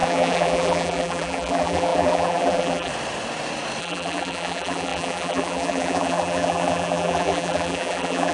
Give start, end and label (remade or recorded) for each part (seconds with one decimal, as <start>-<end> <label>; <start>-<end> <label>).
0.0-2.9 remade; 2.9-3.8 recorded; 3.8-8.3 remade